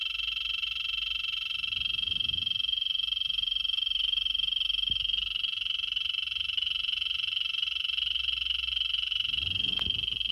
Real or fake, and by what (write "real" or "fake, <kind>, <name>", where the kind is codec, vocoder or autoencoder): real